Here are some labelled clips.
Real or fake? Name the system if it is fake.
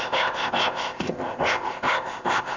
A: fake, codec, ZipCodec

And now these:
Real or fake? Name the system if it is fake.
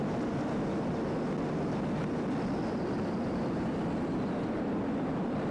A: real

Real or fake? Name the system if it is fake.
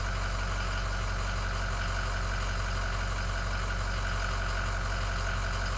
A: real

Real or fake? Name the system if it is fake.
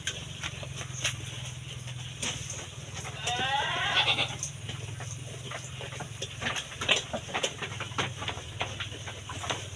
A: real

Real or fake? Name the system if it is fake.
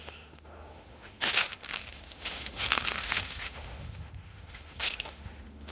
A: fake, autoencoder, DAC-VAE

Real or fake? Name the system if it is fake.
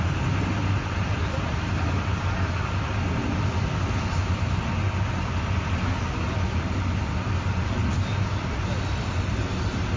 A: real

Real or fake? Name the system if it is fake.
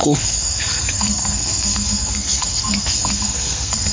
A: fake, codec, SNAC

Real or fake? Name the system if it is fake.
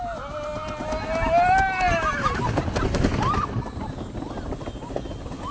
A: real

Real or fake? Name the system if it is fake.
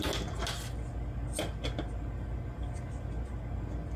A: real